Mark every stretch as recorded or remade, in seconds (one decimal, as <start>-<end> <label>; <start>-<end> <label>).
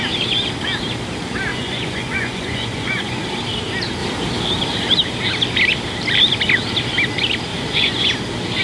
0.0-1.5 recorded; 1.5-3.2 remade; 3.2-7.5 recorded; 7.5-8.1 remade; 8.1-8.6 recorded